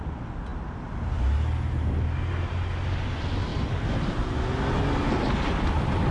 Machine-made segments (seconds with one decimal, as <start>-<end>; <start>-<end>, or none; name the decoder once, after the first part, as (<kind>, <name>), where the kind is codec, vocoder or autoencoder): none